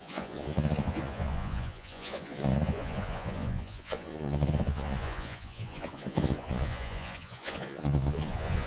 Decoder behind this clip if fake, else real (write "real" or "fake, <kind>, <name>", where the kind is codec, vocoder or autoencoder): fake, vocoder, Vocos